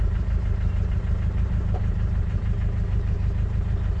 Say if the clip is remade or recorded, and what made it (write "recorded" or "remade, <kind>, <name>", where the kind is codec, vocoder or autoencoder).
remade, vocoder, BigVGAN v2